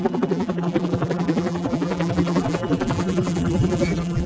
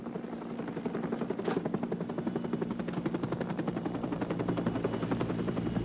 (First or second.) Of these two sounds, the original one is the second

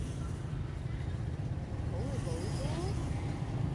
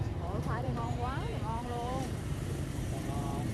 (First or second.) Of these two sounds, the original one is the first